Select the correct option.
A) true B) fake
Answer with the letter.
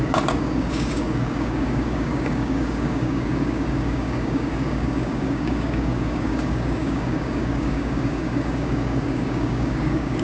B